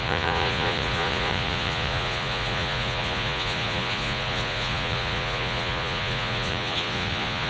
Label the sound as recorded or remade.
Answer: remade